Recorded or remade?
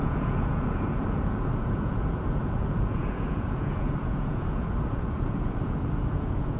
remade